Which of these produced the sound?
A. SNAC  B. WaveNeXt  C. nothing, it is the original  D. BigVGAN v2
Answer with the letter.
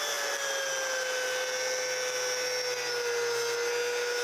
C